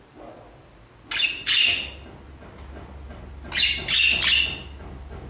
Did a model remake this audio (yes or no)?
no